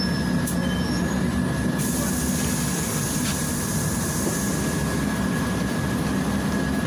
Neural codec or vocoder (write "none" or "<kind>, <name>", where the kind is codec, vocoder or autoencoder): none